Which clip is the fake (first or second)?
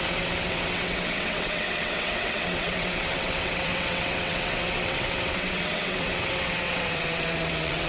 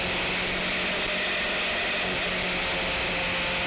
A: first